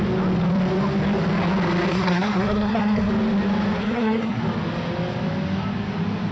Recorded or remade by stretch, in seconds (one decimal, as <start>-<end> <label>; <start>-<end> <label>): 0.0-1.9 recorded; 1.9-3.1 remade; 3.1-3.8 recorded; 3.8-4.4 remade; 4.4-6.3 recorded